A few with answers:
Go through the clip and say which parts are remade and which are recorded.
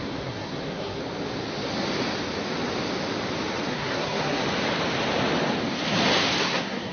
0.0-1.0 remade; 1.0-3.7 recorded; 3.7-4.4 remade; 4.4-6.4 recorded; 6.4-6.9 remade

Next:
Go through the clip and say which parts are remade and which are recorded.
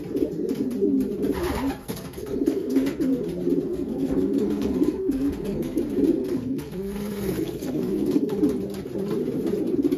0.0-1.8 recorded; 1.8-3.1 remade; 3.1-3.7 recorded; 3.7-5.8 remade; 5.8-6.2 recorded; 6.2-8.4 remade; 8.4-10.0 recorded